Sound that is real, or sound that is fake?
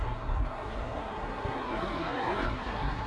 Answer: fake